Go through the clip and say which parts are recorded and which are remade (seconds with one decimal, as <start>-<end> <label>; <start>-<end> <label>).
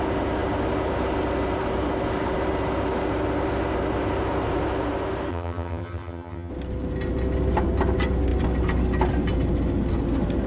0.0-5.3 recorded; 5.3-6.5 remade; 6.5-10.5 recorded